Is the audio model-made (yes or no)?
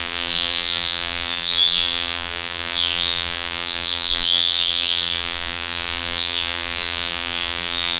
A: yes